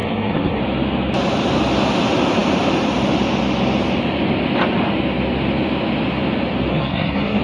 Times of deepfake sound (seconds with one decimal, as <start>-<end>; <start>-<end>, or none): 0.0-0.6; 6.7-7.4